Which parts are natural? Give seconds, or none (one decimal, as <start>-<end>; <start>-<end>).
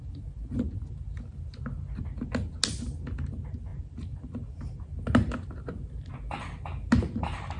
0.0-7.6